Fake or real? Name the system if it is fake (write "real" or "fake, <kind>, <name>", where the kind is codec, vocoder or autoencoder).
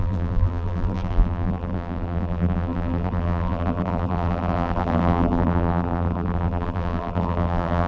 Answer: fake, vocoder, BigVGAN v2